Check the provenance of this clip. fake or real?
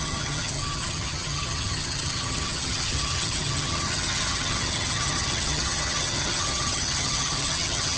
fake